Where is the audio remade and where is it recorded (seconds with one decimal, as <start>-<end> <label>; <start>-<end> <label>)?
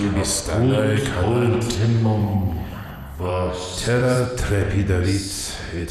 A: 0.0-2.2 recorded; 2.2-3.3 remade; 3.3-5.9 recorded